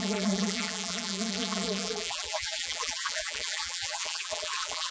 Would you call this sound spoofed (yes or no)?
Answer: yes